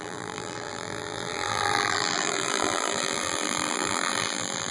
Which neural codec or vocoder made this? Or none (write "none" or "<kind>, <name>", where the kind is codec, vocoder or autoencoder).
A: vocoder, BigVGAN v2